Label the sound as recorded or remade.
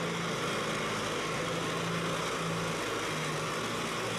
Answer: recorded